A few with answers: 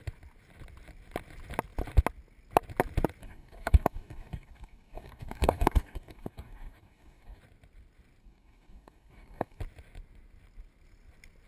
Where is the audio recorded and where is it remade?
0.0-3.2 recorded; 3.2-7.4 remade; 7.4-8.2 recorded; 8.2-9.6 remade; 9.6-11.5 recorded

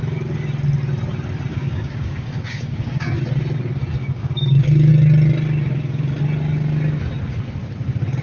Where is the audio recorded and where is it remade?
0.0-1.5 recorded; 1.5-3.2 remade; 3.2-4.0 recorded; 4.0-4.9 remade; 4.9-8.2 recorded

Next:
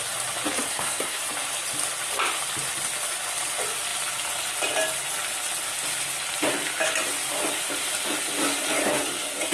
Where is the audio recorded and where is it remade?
0.0-0.7 recorded; 0.7-1.2 remade; 1.2-9.5 recorded

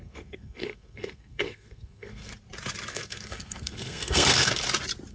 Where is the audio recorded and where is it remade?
0.0-2.3 remade; 2.3-2.9 recorded; 2.9-4.5 remade; 4.5-5.1 recorded

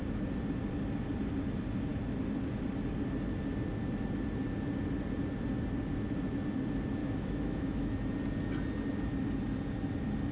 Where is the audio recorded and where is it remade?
0.0-7.0 recorded; 7.0-7.9 remade; 7.9-10.3 recorded

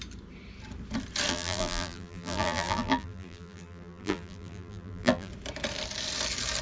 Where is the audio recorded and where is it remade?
0.0-1.3 recorded; 1.3-5.3 remade; 5.3-6.6 recorded

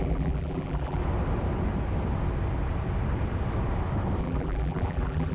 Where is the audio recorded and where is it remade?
0.0-1.0 remade; 1.0-4.2 recorded; 4.2-5.3 remade

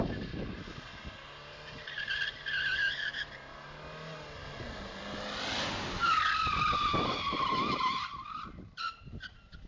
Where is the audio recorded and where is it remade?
0.0-2.8 recorded; 2.8-3.3 remade; 3.3-7.5 recorded; 7.5-8.0 remade; 8.0-9.7 recorded